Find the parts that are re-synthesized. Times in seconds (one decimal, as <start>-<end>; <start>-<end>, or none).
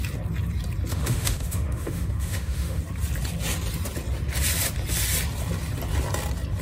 0.9-2.8